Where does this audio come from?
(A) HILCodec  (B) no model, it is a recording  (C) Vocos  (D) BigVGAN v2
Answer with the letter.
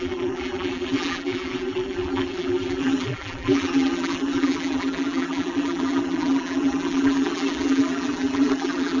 D